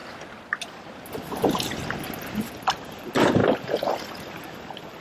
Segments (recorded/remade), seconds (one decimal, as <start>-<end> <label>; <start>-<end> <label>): 0.0-5.0 recorded